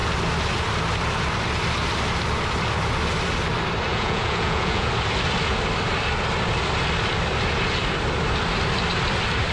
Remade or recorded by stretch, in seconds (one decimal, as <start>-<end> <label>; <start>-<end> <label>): 0.0-3.9 recorded; 3.9-4.9 remade; 4.9-9.5 recorded